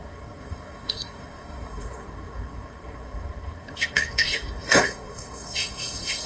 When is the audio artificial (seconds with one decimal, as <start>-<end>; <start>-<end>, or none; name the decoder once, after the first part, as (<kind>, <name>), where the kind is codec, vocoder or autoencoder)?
0.0-6.3 (codec, SNAC)